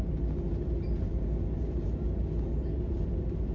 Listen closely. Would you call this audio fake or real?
real